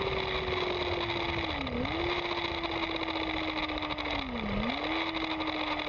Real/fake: real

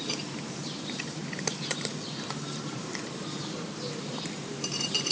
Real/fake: fake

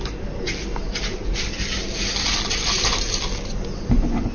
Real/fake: real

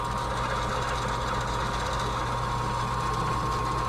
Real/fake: real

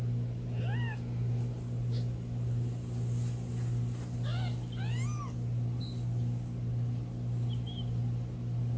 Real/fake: real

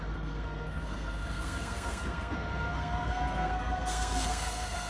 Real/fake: fake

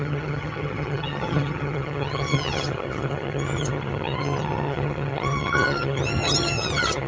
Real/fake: fake